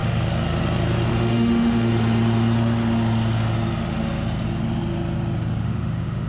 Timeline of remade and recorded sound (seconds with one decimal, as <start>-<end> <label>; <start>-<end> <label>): 0.0-1.1 recorded; 1.1-1.9 remade; 1.9-5.6 recorded; 5.6-6.3 remade